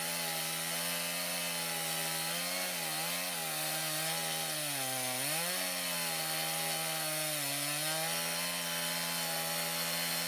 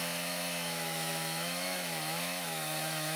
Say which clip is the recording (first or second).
first